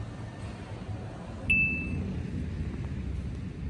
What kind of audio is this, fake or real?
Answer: real